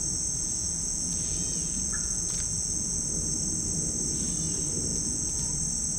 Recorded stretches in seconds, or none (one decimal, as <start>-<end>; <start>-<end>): 0.0-0.4; 3.0-4.9; 5.4-6.0